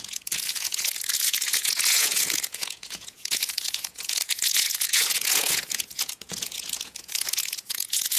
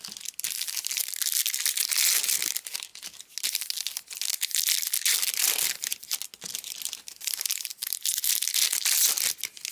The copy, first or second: first